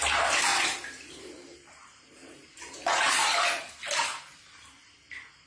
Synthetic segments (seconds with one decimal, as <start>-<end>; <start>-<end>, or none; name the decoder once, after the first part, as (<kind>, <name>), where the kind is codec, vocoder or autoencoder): 0.5-3.8 (vocoder, BigVGAN v2)